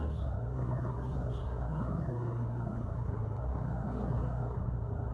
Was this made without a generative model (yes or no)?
no